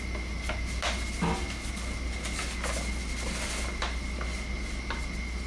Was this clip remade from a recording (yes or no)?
no